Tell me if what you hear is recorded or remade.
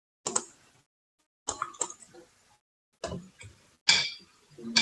recorded